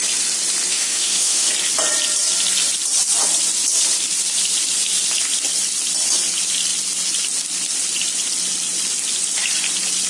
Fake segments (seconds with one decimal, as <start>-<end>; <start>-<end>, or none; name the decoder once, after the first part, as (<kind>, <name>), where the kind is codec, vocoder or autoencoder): 0.7-1.5 (autoencoder, DAC-VAE)